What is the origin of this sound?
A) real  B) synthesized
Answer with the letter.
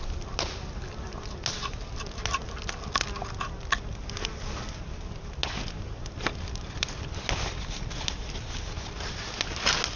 A